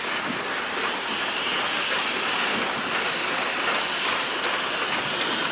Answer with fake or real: real